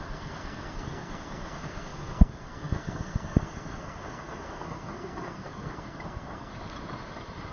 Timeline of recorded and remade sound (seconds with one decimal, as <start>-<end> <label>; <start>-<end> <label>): 0.0-6.5 remade; 6.5-7.5 recorded